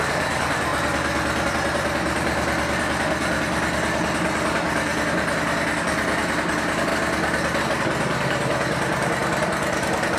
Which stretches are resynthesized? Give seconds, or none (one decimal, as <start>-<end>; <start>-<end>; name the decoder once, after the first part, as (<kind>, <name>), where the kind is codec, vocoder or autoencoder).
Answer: 0.0-0.7 (vocoder, BigVGAN v2); 1.5-6.9; 7.6-10.2